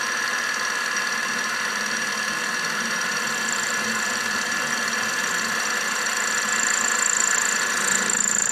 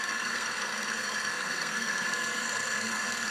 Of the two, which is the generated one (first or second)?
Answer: second